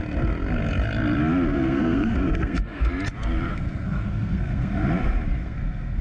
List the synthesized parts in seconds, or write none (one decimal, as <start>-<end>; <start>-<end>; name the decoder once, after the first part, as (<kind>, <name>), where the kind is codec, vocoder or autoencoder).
1.5-2.9 (codec, SNAC); 3.5-4.7; 5.4-6.0